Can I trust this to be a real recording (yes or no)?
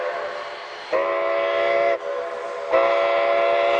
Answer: yes